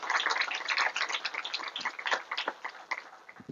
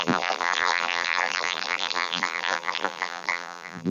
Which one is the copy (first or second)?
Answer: second